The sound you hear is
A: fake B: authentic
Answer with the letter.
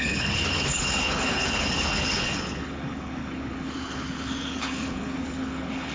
A